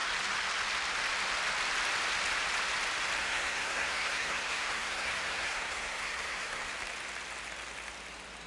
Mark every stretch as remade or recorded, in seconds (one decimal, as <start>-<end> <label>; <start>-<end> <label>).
0.0-3.2 recorded; 3.2-6.7 remade; 6.7-8.5 recorded